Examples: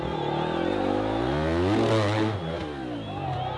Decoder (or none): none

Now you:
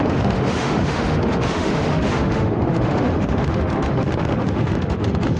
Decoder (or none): autoencoder, DAC-VAE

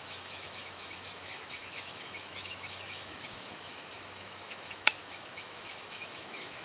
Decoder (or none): autoencoder, DAC-VAE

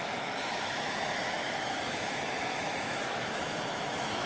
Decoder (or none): autoencoder, DAC-VAE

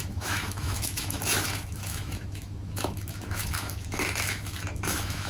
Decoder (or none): autoencoder, DAC-VAE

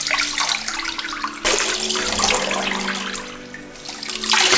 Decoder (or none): none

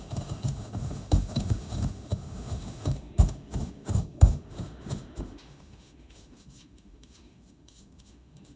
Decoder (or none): autoencoder, DAC-VAE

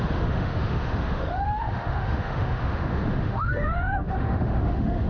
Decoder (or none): autoencoder, DAC-VAE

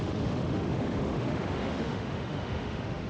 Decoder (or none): autoencoder, DAC-VAE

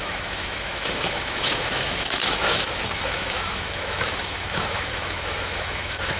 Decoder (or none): autoencoder, DAC-VAE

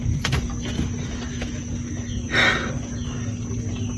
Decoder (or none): none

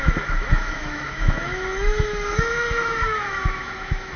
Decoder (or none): autoencoder, DAC-VAE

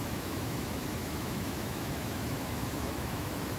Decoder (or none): autoencoder, DAC-VAE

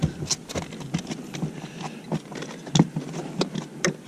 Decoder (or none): none